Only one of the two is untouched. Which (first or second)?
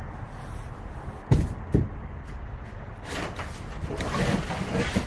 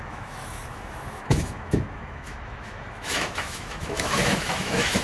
first